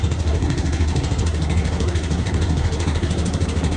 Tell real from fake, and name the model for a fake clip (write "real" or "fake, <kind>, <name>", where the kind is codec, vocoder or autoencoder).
fake, codec, SNAC